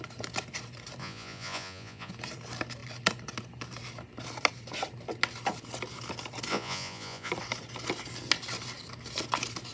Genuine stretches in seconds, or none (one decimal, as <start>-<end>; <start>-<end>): 0.0-1.0; 2.1-6.5; 7.3-9.7